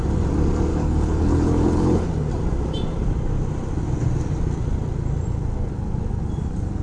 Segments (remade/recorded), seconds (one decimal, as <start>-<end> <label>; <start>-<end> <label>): 0.0-0.7 recorded; 0.7-2.1 remade; 2.1-6.8 recorded